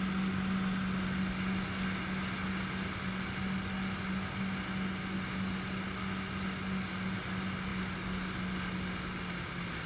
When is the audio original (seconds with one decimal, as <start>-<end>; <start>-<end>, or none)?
0.0-9.9